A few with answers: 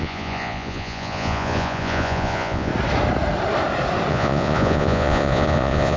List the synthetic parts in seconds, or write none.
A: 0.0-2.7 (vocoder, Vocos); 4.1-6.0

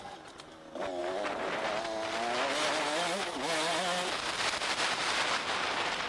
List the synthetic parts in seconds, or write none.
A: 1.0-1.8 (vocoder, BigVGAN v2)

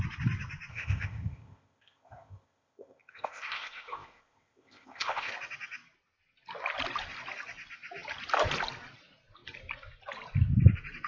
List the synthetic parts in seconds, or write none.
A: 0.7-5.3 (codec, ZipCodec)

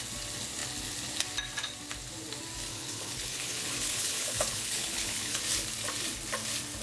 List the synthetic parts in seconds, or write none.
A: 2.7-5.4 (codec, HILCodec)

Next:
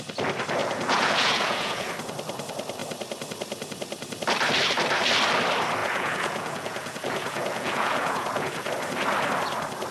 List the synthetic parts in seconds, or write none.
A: 0.6-1.9 (vocoder, Vocos); 5.8-8.7